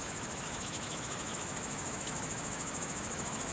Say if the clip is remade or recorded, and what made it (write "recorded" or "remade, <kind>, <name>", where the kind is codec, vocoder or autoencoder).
remade, autoencoder, DAC-VAE